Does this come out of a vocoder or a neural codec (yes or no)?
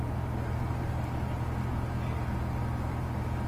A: no